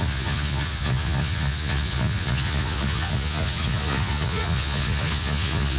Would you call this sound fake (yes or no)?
yes